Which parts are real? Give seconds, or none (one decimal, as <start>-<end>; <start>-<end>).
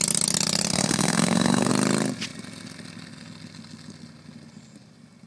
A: 0.0-0.7; 1.7-5.3